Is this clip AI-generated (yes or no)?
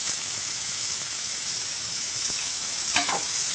yes